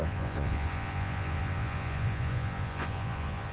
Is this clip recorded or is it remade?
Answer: remade